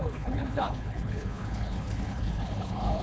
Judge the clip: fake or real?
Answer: fake